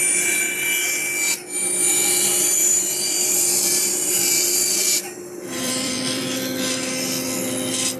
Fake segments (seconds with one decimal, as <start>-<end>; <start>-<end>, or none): 2.6-6.6